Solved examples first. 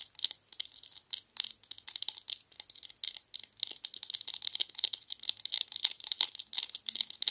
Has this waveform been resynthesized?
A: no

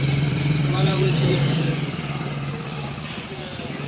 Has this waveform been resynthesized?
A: yes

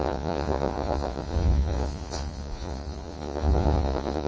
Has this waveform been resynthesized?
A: yes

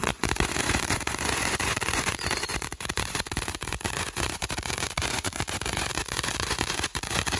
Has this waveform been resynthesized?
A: yes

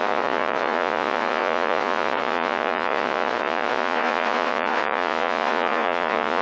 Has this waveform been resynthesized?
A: yes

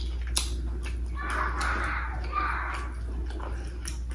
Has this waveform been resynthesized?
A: no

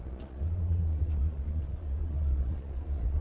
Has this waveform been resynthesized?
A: yes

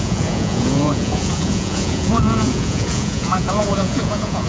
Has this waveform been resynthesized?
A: yes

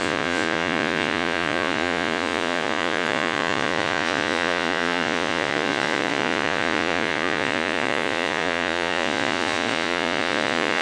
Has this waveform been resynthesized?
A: yes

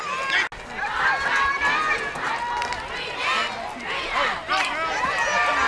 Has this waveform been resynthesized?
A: no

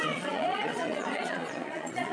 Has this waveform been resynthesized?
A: yes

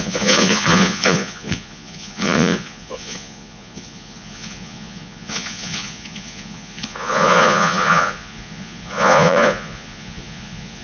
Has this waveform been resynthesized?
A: yes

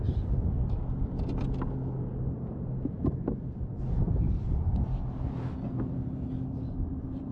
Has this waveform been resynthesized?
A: no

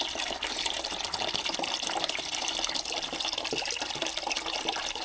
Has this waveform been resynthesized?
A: no